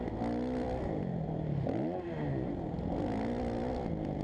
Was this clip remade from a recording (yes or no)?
no